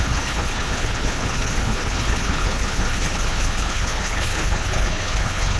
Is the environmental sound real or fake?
fake